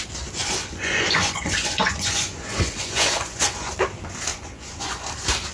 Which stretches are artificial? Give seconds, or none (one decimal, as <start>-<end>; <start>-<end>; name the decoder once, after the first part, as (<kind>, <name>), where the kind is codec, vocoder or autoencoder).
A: 0.4-3.7 (vocoder, Vocos); 4.3-5.1